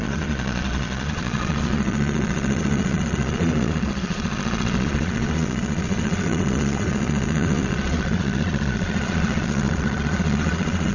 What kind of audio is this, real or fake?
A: fake